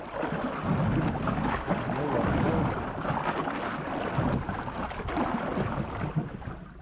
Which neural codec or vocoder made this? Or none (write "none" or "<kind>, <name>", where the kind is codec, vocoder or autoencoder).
none